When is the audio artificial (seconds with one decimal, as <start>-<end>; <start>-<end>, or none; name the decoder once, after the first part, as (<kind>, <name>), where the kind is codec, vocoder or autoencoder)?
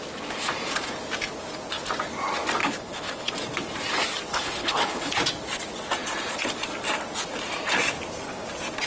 2.6-3.3 (codec, HILCodec); 4.3-5.2